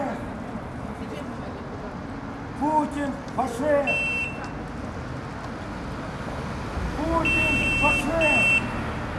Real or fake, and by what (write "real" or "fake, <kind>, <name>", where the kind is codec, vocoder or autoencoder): real